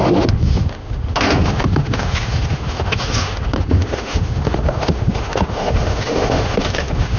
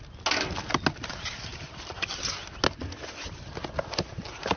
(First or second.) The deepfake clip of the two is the first